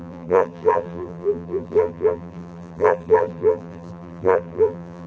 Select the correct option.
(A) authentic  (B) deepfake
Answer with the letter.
B